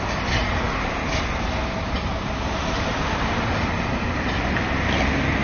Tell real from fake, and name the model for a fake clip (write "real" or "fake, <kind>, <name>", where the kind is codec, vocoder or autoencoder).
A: real